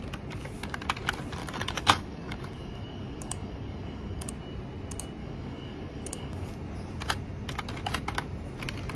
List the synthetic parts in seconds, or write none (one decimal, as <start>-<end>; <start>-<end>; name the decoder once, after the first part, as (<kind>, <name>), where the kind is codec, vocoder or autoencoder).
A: 1.4-4.3 (codec, DAC); 5.2-6.5